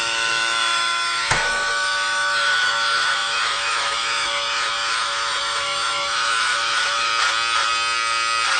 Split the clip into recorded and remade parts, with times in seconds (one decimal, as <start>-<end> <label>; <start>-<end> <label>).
0.0-7.1 remade; 7.1-8.6 recorded